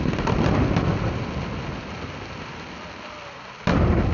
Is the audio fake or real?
real